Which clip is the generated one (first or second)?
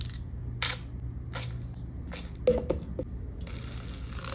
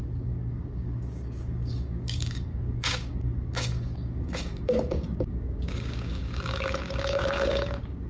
second